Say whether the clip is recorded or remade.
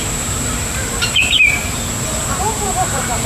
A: remade